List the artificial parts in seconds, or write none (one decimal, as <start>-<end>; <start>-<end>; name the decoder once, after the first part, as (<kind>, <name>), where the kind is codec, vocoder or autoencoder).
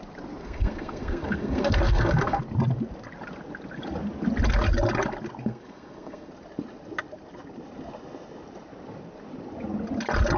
0.4-2.4 (codec, SNAC); 5.4-6.3